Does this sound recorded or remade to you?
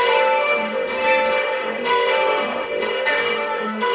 remade